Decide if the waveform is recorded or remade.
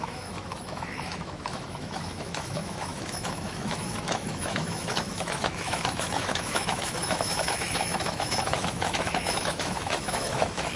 remade